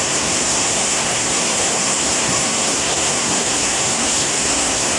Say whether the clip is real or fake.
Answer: fake